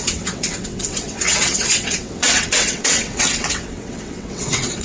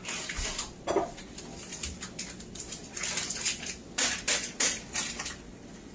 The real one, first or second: second